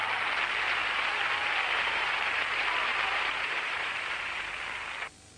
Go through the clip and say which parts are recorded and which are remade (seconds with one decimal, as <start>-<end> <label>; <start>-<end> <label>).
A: 0.0-1.8 recorded; 1.8-2.4 remade; 2.4-2.9 recorded; 2.9-4.4 remade; 4.4-5.4 recorded